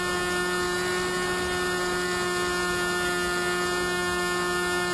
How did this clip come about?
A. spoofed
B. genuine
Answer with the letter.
B